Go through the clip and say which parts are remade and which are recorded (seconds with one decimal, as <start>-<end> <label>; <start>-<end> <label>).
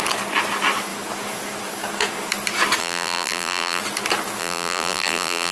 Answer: 0.0-2.8 recorded; 2.8-3.8 remade; 3.8-4.4 recorded; 4.4-5.5 remade